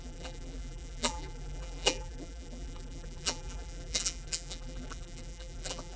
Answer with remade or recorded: remade